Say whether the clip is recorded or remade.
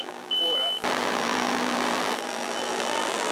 remade